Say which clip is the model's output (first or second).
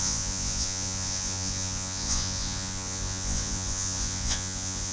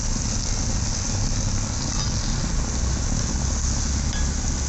first